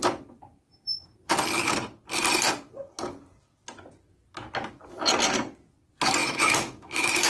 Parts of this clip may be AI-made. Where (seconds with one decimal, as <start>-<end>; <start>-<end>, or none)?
6.2-7.3